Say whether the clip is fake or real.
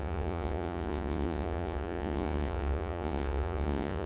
fake